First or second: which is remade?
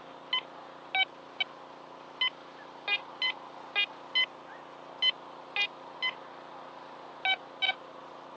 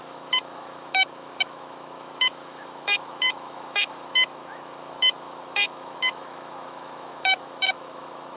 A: second